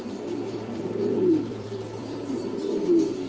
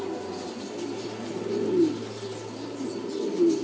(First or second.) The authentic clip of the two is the second